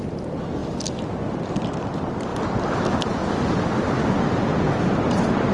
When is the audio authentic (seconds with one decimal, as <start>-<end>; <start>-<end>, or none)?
0.0-0.6; 1.6-2.3; 2.8-5.5